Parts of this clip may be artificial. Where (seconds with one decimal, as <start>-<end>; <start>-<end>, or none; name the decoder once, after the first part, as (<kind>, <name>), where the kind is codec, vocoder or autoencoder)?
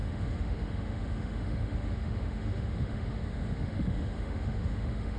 0.0-5.2 (autoencoder, DAC-VAE)